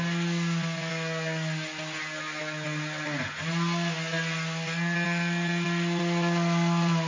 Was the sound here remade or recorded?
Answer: recorded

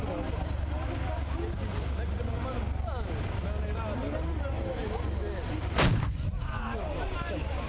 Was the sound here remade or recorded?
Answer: recorded